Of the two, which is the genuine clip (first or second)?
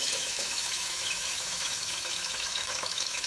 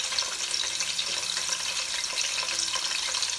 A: second